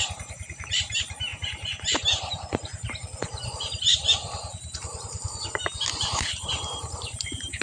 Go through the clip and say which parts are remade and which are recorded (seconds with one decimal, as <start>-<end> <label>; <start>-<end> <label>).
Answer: 0.0-1.3 remade; 1.3-5.9 recorded; 5.9-7.6 remade